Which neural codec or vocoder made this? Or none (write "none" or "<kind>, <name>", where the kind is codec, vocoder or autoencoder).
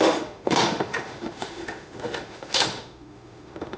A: autoencoder, DAC-VAE